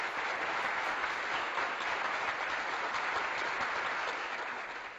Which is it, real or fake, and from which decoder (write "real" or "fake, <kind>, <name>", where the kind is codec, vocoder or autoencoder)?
real